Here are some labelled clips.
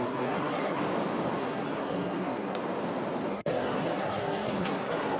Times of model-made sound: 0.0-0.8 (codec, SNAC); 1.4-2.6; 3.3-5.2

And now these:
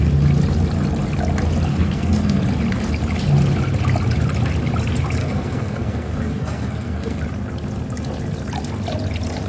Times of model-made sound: 1.7-2.4 (codec, SNAC); 5.2-7.2

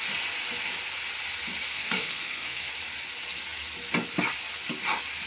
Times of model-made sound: 1.7-2.7 (codec, SNAC)

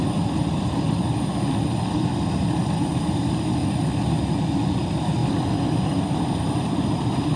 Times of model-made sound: none